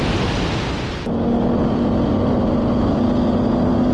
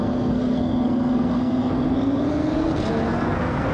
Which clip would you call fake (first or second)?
second